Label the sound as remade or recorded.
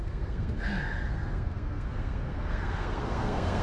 remade